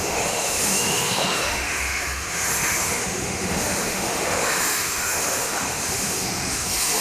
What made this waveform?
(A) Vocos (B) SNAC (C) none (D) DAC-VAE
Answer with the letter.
D